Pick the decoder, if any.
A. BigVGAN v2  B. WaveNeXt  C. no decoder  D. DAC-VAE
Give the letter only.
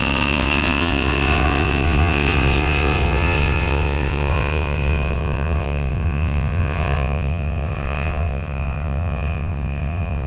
B